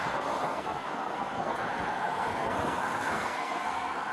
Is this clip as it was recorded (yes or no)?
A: no